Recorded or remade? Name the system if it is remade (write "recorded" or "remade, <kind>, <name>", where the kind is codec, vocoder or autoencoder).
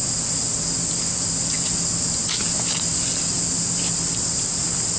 recorded